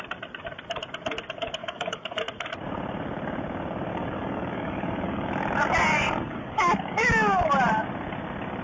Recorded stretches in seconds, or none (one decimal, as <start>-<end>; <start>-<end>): 0.0-1.6; 2.2-3.9; 5.3-5.9; 7.5-8.6